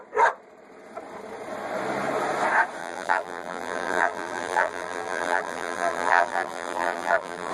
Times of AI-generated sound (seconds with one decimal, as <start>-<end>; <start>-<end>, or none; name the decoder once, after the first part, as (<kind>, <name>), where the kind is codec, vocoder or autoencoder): 2.8-7.5 (vocoder, BigVGAN v2)